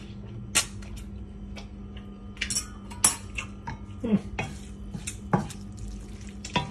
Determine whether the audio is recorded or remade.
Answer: recorded